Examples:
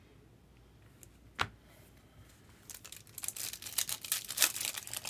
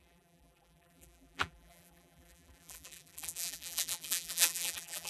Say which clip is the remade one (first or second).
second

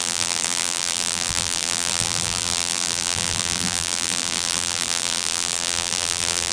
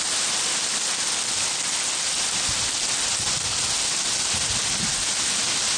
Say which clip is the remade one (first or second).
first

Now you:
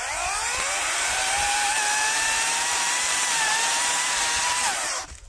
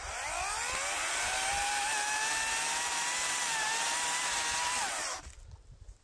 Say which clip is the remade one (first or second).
first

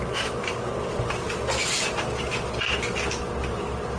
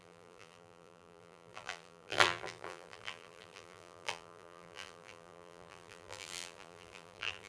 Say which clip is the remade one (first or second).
second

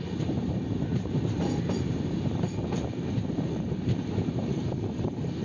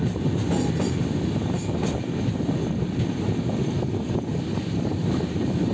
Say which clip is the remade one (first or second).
first